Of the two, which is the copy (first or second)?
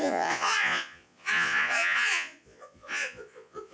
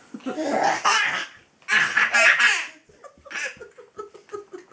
first